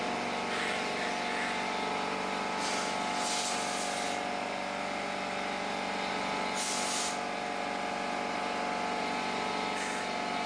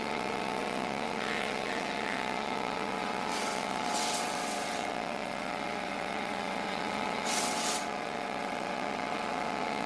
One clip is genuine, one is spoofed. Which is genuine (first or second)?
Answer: first